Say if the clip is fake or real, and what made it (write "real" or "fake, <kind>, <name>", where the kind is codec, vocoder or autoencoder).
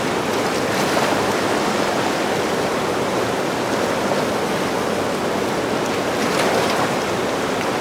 real